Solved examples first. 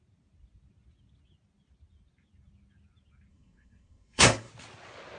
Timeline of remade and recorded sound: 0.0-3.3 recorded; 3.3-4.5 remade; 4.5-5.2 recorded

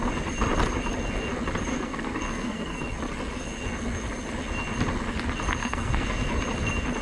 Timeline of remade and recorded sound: 0.0-1.7 recorded; 1.7-2.8 remade; 2.8-5.6 recorded; 5.6-6.4 remade; 6.4-7.0 recorded

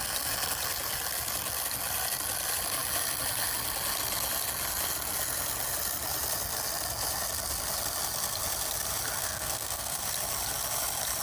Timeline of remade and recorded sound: 0.0-9.2 recorded; 9.2-10.0 remade; 10.0-11.2 recorded